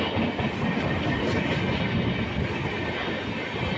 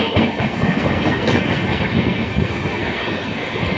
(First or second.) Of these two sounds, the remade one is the second